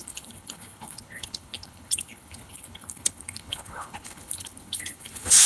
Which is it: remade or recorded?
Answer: remade